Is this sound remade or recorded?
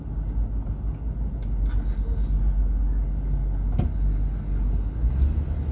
recorded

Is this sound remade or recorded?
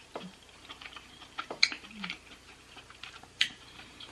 remade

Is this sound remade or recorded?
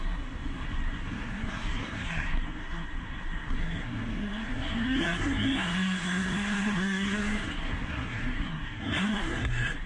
remade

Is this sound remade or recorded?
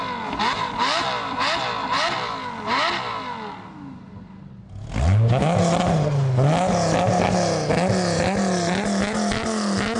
recorded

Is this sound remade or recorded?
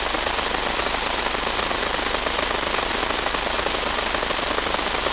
recorded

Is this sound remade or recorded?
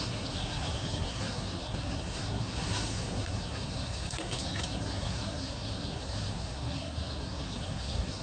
remade